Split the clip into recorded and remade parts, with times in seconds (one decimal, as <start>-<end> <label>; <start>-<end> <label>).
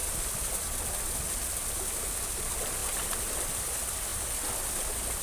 0.0-5.2 recorded